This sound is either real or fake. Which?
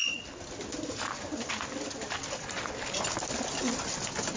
real